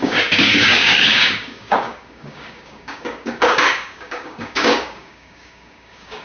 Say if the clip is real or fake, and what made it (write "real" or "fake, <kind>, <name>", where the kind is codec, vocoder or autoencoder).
fake, codec, DAC